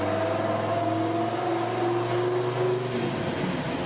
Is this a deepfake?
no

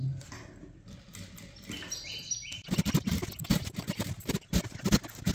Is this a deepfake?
no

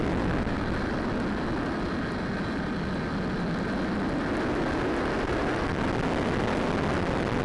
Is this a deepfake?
no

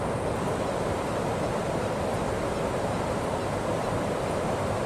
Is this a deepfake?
no